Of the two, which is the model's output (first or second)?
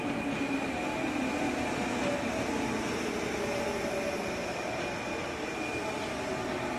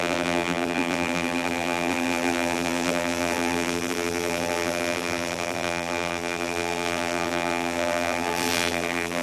second